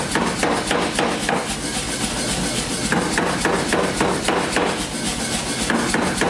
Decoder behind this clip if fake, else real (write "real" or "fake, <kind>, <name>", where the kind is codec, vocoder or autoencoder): real